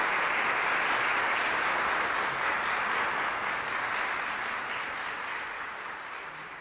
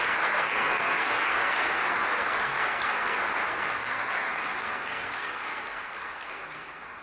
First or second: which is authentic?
first